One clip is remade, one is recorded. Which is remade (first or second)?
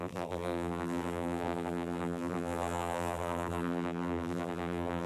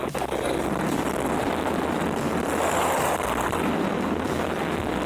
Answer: first